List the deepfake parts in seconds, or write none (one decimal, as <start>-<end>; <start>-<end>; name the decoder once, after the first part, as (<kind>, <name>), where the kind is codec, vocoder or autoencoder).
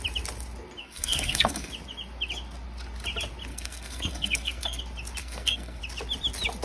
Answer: 0.8-1.7 (codec, SNAC); 3.5-4.8; 5.2-5.8